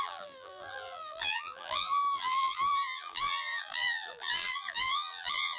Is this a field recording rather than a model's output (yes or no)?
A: no